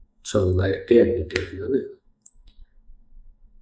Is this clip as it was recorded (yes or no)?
no